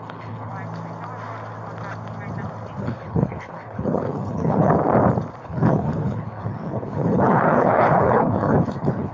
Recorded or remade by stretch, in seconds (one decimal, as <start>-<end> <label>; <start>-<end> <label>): 0.0-0.5 remade; 0.5-2.8 recorded; 2.8-4.7 remade; 4.7-5.4 recorded; 5.4-9.1 remade